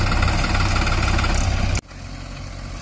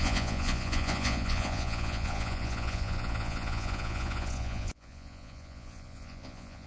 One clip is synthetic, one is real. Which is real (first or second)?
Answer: first